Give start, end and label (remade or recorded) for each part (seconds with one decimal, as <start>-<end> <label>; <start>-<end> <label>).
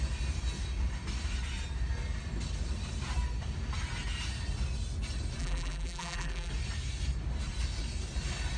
0.0-5.4 recorded; 5.4-6.5 remade; 6.5-8.6 recorded